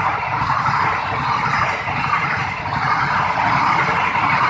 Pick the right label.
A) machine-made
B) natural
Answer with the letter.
B